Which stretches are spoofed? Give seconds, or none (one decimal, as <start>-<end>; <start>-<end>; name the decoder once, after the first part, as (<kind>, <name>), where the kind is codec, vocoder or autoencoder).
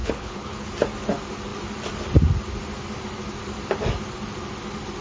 0.0-0.7 (codec, HILCodec)